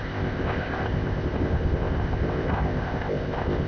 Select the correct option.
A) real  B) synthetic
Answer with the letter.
B